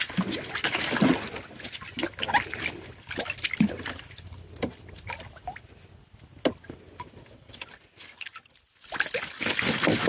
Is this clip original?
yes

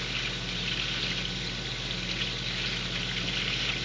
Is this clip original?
yes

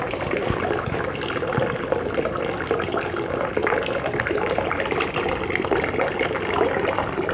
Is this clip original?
yes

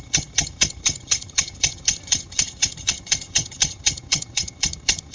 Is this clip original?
no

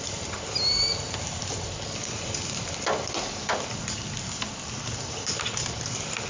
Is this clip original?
yes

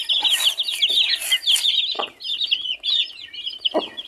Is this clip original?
yes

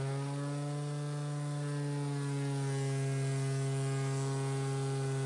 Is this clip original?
yes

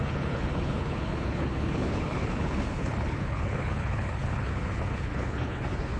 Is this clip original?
no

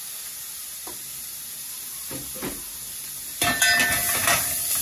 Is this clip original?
yes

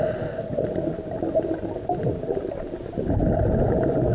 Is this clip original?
yes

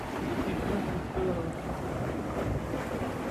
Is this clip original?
yes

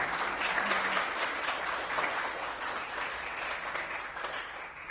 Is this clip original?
yes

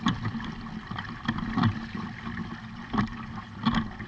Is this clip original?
yes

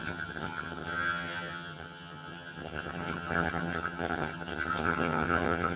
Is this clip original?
no